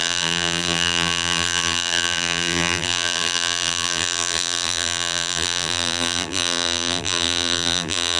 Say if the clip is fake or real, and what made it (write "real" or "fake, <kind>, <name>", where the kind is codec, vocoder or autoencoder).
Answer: fake, vocoder, BigVGAN v2